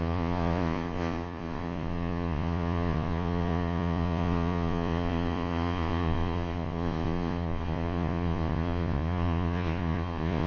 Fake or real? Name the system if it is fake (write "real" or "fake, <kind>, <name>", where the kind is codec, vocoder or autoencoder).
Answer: fake, vocoder, Vocos